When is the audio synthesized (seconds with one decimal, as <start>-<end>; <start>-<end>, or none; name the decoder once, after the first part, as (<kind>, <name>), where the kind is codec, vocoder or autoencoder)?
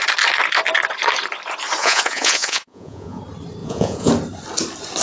1.8-3.2 (vocoder, Vocos); 3.6-4.1